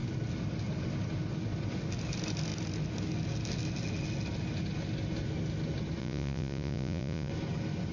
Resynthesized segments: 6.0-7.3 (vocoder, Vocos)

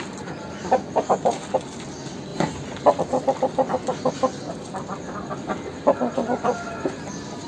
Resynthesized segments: 2.3-3.0 (vocoder, BigVGAN v2)